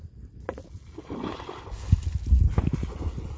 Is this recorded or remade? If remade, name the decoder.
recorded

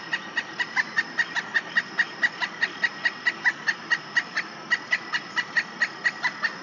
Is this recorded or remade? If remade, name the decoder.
recorded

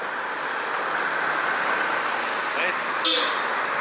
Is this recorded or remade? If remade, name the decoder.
recorded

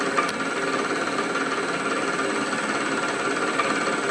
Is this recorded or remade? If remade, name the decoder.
recorded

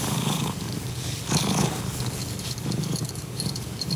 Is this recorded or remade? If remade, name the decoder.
remade, codec, DAC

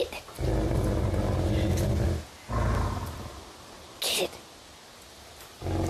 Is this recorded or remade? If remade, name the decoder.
recorded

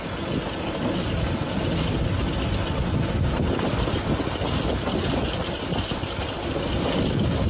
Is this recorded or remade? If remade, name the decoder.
recorded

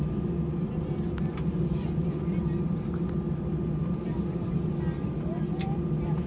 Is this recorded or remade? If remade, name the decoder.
recorded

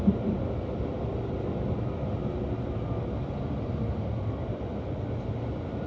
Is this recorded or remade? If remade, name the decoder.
recorded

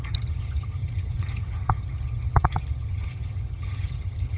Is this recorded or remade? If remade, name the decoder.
remade, vocoder, HiFi-GAN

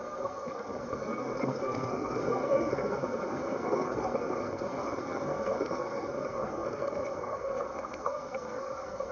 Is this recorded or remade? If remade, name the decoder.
remade, codec, SNAC